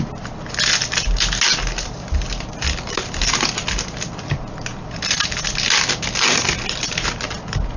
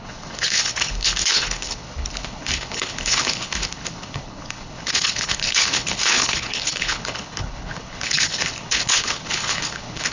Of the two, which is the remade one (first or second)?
second